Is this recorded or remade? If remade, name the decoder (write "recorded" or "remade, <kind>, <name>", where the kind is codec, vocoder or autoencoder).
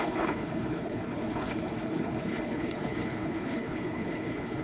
remade, codec, HILCodec